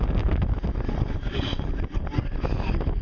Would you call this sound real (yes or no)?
yes